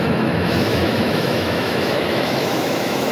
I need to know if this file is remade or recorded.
remade